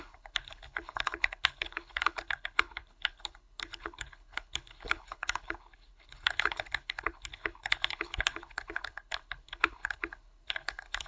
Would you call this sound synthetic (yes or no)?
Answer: yes